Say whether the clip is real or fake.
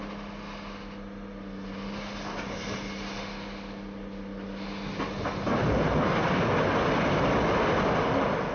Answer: real